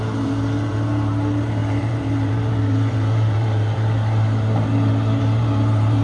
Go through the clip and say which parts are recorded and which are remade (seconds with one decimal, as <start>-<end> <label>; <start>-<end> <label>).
0.0-6.0 remade